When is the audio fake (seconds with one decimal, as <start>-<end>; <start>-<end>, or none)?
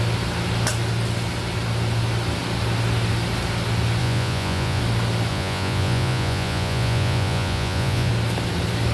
4.0-4.8; 5.3-8.1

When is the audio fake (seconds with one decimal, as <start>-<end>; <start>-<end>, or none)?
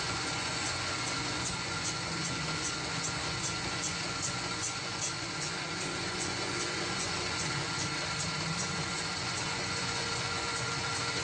0.0-7.9; 8.6-11.2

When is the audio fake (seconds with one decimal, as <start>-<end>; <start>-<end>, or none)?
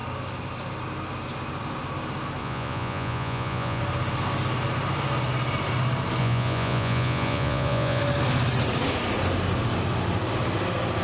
2.4-3.8; 6.2-8.0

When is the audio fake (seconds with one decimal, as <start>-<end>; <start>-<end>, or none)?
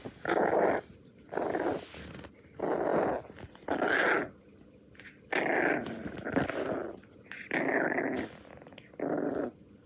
none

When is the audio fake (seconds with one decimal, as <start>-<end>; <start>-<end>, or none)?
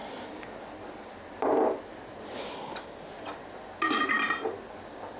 none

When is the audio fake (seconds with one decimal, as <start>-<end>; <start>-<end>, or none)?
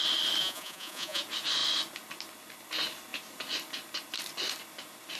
0.4-1.2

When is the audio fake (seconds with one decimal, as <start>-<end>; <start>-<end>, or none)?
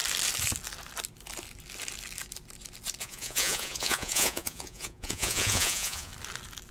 3.0-6.1